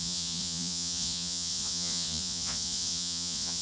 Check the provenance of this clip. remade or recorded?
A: remade